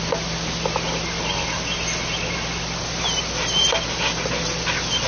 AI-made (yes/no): no